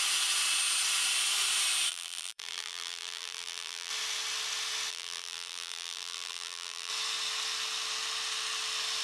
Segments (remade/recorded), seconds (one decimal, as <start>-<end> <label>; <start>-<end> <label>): 0.0-1.9 recorded; 1.9-3.9 remade; 3.9-4.9 recorded; 4.9-6.9 remade; 6.9-9.0 recorded